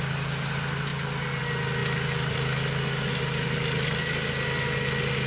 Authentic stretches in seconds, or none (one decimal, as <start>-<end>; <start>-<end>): 0.0-5.3